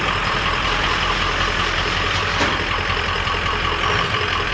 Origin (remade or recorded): remade